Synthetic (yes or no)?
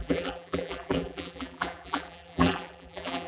yes